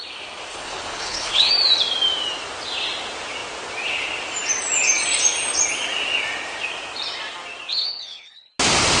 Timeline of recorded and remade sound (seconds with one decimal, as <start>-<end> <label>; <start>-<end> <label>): 0.0-0.5 recorded; 0.5-1.5 remade; 1.5-7.7 recorded; 7.7-8.5 remade; 8.5-9.0 recorded